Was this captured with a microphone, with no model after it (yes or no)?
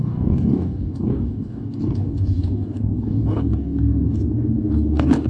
no